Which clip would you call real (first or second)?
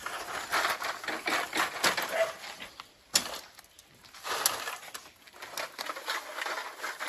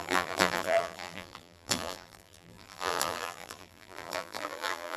first